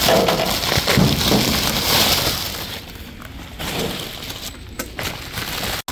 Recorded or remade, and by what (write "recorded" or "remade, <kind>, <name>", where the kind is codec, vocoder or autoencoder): recorded